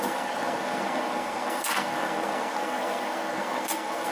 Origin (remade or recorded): remade